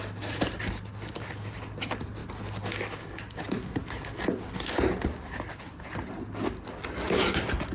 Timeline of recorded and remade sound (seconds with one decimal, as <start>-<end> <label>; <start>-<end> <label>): 0.0-7.7 recorded